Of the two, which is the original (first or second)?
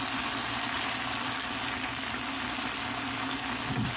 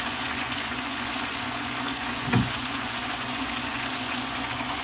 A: first